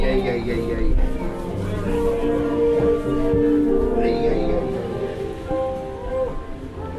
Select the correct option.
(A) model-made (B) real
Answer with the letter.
B